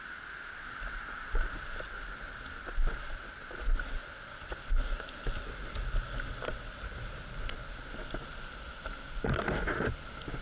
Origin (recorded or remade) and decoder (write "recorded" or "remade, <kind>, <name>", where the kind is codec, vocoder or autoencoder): recorded